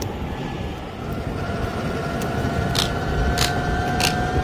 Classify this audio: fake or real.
real